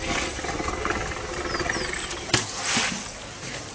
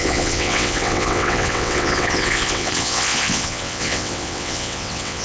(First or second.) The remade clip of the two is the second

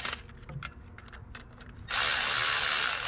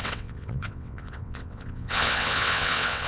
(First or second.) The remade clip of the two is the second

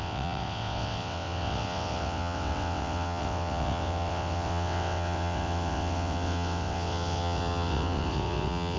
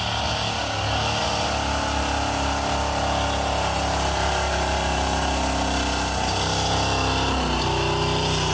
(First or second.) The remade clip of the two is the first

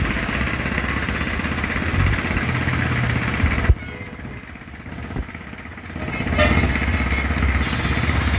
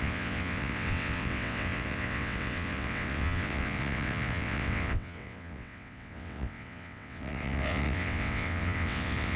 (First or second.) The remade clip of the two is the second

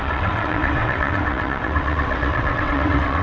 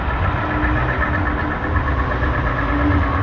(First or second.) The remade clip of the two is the first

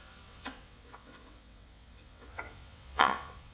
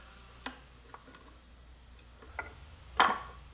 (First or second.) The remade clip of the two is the first